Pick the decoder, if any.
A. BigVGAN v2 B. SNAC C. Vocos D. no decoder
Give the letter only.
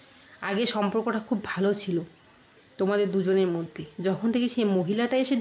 D